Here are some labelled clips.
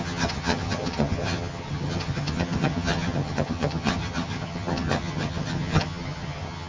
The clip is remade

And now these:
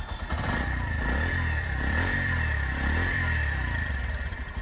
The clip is remade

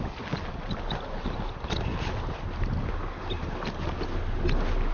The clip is recorded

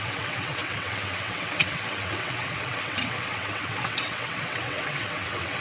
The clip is remade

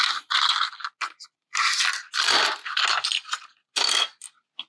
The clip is recorded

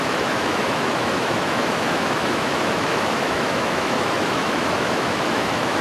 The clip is remade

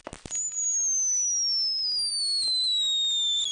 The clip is recorded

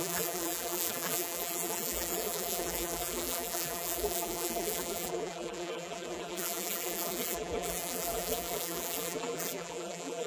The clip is remade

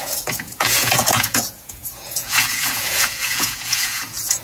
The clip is remade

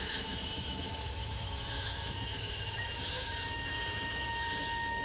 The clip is remade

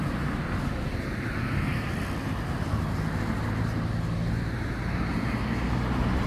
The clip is recorded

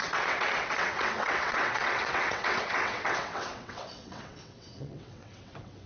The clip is remade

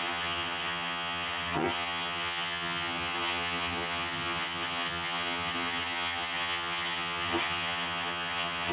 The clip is remade